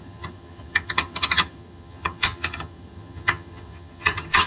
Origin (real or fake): fake